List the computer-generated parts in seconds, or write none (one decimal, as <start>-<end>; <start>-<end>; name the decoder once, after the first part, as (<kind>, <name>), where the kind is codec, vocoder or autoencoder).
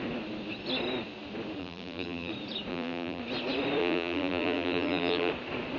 1.6-2.3 (vocoder, BigVGAN v2); 2.7-3.2; 3.8-5.3